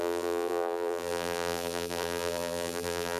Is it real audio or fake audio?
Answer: fake